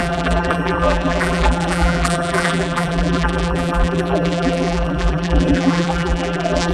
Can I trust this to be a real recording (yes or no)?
no